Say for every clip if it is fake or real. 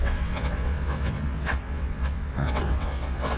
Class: fake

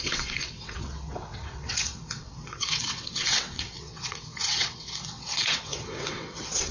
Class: fake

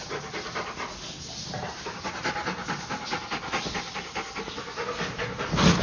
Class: real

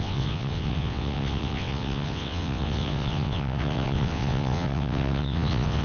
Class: fake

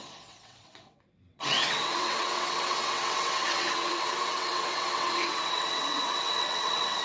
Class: fake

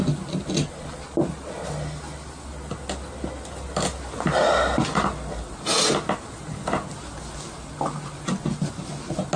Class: real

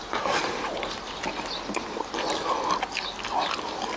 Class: real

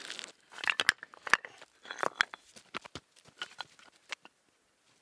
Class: real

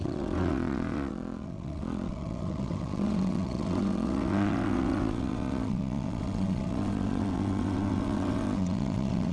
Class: fake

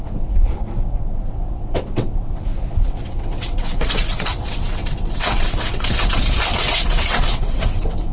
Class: fake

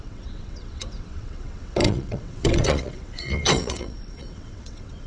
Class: fake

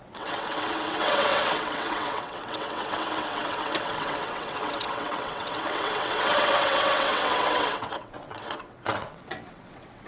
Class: fake